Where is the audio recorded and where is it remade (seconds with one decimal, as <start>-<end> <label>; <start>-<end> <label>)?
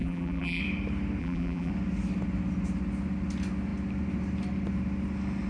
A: 0.0-0.6 remade; 0.6-1.2 recorded; 1.2-1.7 remade; 1.7-5.5 recorded